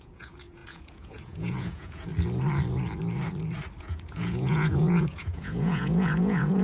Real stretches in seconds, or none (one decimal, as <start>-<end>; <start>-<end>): 2.1-3.8